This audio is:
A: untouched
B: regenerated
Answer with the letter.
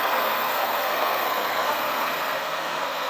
B